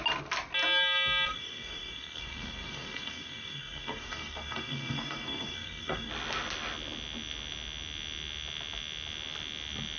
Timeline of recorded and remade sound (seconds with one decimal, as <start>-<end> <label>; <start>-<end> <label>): 0.0-1.3 recorded; 1.3-6.1 remade; 6.1-10.0 recorded